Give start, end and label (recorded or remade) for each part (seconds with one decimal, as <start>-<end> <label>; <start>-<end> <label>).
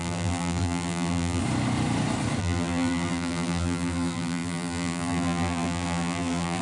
0.0-1.4 remade; 1.4-2.4 recorded; 2.4-6.6 remade